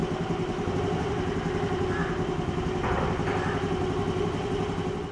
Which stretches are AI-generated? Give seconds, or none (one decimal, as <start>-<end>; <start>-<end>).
2.0-2.8